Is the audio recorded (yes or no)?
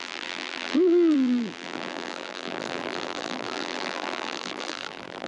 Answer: no